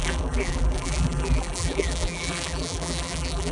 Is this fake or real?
fake